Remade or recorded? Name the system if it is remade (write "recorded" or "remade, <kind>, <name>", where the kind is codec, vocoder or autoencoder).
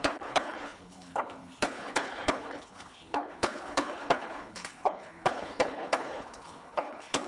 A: remade, codec, HILCodec